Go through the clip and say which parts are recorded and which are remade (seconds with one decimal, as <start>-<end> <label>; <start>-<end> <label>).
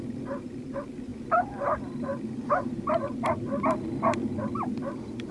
0.0-5.3 recorded